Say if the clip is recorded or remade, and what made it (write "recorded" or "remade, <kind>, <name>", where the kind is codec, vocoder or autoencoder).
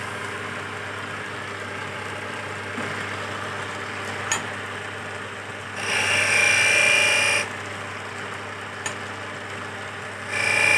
recorded